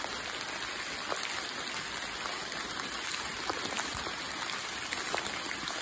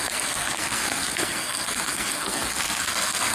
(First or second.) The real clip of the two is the first